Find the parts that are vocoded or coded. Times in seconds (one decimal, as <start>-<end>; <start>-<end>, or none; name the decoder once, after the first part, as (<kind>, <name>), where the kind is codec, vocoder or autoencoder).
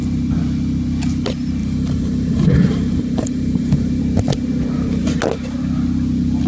1.6-4.0 (vocoder, BigVGAN v2)